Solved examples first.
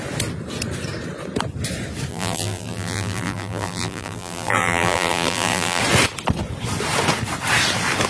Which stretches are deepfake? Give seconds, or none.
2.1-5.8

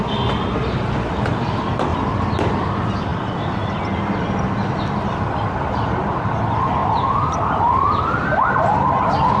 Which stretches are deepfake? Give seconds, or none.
6.8-8.5